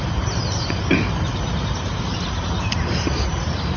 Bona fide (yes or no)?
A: no